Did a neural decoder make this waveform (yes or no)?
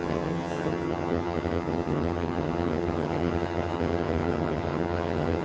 yes